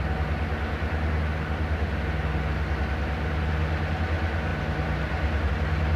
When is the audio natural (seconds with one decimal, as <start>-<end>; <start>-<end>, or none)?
0.0-4.5; 5.5-6.0